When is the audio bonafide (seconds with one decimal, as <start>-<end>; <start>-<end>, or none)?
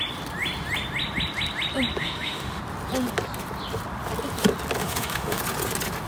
0.0-2.0; 2.6-4.8; 5.4-6.1